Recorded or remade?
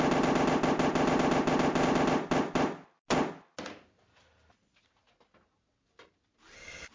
recorded